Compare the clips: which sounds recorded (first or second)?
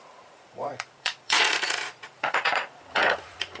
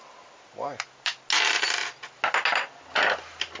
second